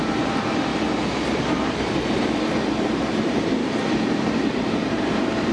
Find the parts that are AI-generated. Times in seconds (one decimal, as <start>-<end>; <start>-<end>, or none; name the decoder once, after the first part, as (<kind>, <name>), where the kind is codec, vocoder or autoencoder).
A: 0.0-0.7 (vocoder, BigVGAN v2); 2.1-3.6; 4.1-5.5